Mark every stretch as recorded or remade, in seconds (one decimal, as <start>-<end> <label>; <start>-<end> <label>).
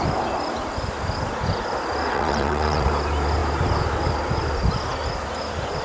0.0-2.1 recorded; 2.1-2.9 remade; 2.9-5.8 recorded